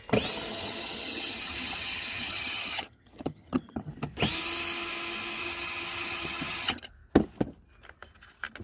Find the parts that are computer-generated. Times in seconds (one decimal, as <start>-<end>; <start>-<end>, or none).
0.5-3.9; 5.4-6.9